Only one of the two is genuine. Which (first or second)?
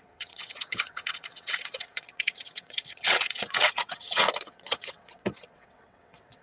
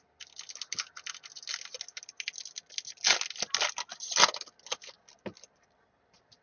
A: second